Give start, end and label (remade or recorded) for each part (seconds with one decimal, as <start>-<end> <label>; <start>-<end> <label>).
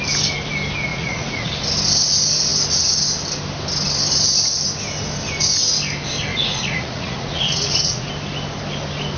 0.0-0.9 recorded; 0.9-1.5 remade; 1.5-6.3 recorded; 6.3-8.1 remade; 8.1-9.2 recorded